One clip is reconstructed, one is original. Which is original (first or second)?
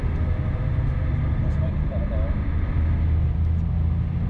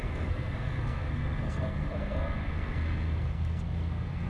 first